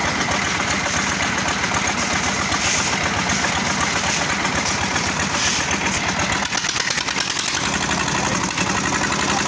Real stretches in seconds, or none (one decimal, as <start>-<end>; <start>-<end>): 0.0-9.5